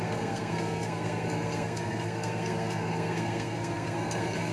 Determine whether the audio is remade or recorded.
remade